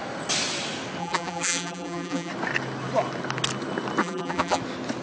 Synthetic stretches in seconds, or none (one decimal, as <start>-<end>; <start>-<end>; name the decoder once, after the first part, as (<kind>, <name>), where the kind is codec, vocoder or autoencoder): 1.0-2.3 (vocoder, BigVGAN v2); 4.0-4.6